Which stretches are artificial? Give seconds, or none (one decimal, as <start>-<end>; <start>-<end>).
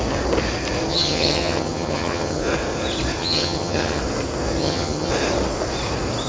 0.9-2.4; 3.2-4.0; 4.6-5.1